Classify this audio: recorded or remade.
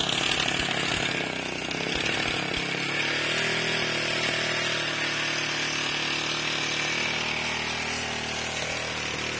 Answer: recorded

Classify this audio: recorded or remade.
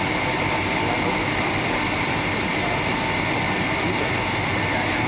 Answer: recorded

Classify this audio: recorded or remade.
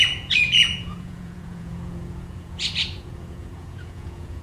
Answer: remade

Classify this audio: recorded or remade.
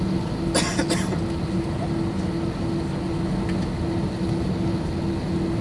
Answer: recorded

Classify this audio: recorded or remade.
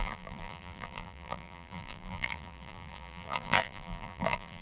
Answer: remade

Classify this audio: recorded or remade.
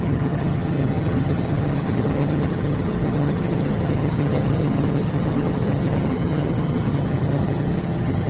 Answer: remade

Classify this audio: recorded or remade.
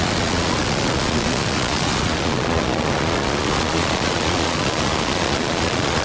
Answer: remade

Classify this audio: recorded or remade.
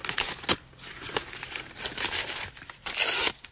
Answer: recorded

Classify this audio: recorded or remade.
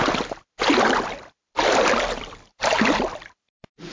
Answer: remade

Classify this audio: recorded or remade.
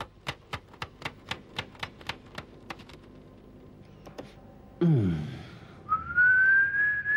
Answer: recorded